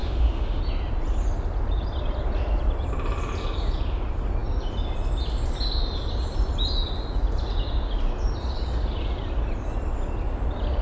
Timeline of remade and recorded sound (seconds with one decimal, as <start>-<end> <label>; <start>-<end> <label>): 0.0-0.6 remade; 0.6-10.8 recorded